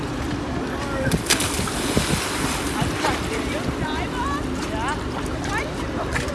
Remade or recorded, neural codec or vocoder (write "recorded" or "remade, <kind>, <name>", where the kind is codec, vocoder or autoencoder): recorded